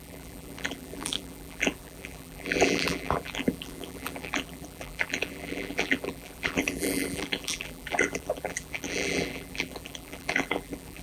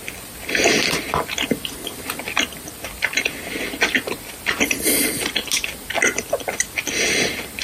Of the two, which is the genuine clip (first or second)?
second